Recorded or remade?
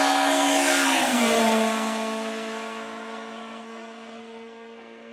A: remade